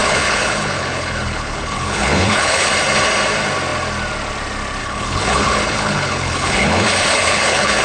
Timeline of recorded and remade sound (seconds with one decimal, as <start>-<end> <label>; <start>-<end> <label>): 0.0-2.7 remade; 2.7-4.8 recorded; 4.8-7.8 remade